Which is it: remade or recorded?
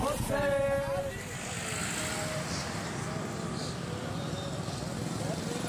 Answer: recorded